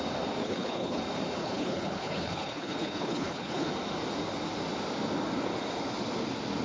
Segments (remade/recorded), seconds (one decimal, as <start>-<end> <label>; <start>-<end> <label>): 0.0-0.4 recorded; 0.4-1.0 remade; 1.0-1.4 recorded; 1.4-3.7 remade; 3.7-6.6 recorded